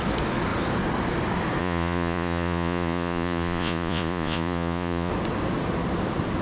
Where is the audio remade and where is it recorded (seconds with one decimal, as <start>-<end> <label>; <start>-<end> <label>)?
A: 0.0-1.6 recorded; 1.6-5.1 remade; 5.1-6.4 recorded